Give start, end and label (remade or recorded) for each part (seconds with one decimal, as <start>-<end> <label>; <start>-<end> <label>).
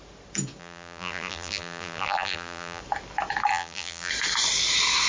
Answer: 0.0-0.6 recorded; 0.6-2.8 remade; 2.8-3.5 recorded; 3.5-4.1 remade; 4.1-5.1 recorded